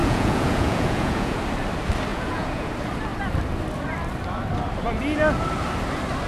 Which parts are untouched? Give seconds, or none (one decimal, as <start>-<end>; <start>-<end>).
1.4-2.1; 2.7-6.3